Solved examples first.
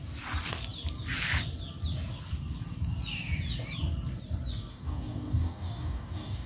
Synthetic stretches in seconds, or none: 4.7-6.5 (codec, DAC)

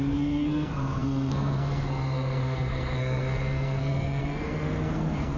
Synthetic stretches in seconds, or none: 0.0-5.4 (codec, SNAC)

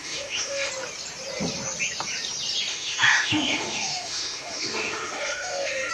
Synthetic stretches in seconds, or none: 0.0-0.7 (autoencoder, DAC-VAE); 2.7-5.9